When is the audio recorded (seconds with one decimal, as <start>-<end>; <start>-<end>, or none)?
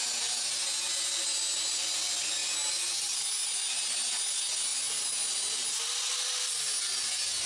0.0-7.5